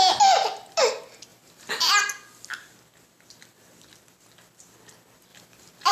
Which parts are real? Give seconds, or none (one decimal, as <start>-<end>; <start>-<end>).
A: 0.0-1.3; 1.9-5.3